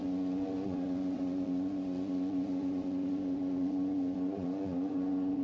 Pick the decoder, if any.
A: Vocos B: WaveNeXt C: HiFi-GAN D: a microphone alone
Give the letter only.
A